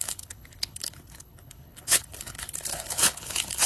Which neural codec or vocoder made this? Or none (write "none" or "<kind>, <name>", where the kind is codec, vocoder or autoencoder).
codec, HILCodec